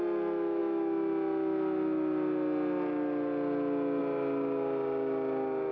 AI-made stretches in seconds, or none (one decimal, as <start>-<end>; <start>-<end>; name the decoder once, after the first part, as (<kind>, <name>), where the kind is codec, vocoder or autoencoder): none